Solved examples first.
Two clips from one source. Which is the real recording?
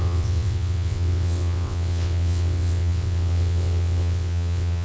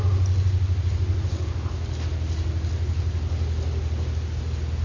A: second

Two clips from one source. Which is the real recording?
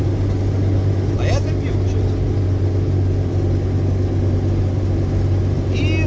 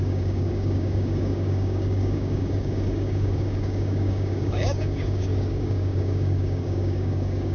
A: first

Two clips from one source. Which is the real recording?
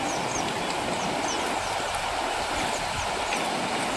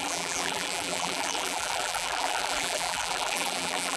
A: first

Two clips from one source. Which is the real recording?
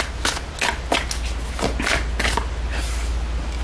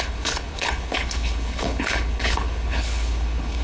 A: first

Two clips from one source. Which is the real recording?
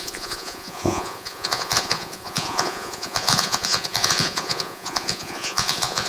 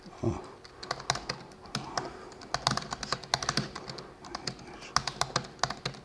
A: second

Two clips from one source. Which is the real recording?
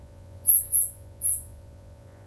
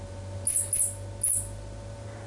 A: second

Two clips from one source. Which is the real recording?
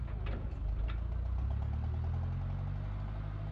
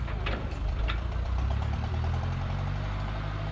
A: first